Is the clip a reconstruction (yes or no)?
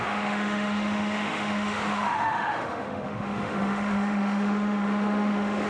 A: yes